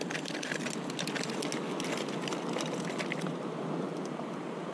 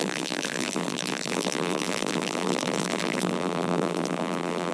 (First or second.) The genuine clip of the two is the first